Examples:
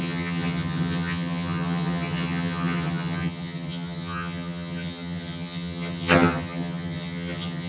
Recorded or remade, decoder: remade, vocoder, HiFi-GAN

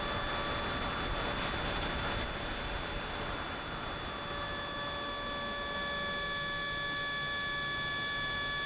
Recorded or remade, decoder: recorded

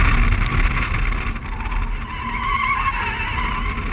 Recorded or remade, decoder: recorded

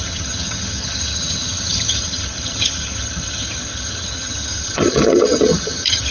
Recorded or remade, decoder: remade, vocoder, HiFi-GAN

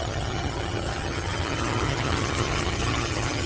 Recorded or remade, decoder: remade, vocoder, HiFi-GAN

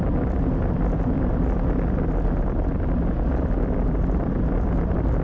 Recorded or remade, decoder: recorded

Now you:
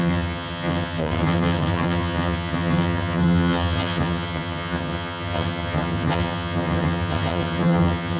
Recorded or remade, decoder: remade, vocoder, HiFi-GAN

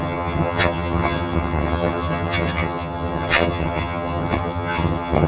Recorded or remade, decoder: remade, vocoder, HiFi-GAN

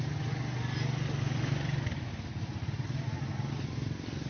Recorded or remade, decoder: recorded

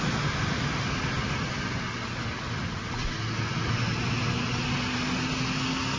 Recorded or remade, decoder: recorded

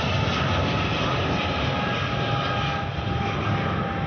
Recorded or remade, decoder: recorded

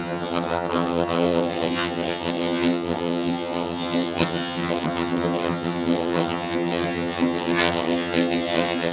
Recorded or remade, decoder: remade, vocoder, HiFi-GAN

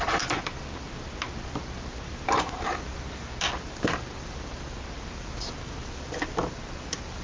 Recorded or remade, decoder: recorded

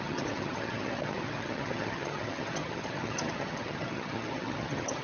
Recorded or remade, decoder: remade, vocoder, HiFi-GAN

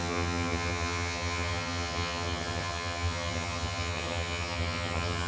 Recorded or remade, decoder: remade, vocoder, HiFi-GAN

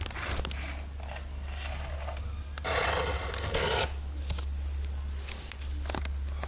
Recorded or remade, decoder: recorded